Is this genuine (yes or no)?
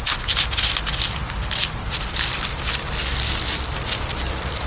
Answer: yes